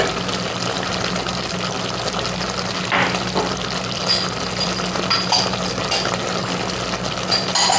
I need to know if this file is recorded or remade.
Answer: recorded